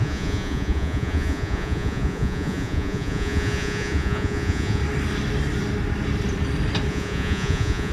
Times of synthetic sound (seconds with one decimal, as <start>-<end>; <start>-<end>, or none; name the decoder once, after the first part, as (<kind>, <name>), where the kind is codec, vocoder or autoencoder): 0.0-4.8 (vocoder, Vocos); 6.9-7.9